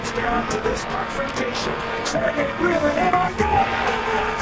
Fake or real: fake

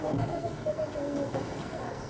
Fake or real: fake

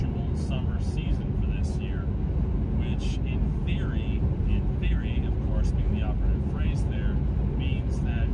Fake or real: real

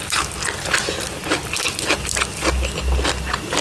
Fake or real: real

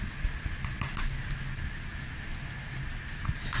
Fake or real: real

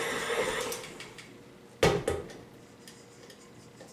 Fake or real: real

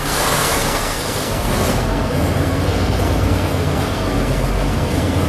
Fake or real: fake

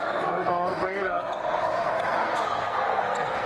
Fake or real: fake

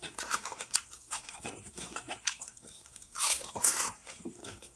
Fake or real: fake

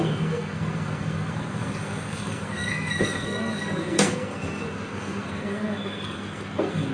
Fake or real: fake